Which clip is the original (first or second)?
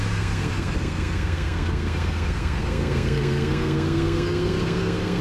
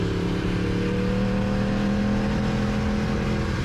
second